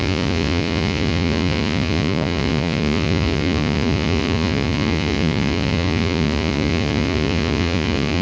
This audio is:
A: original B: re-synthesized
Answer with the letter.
B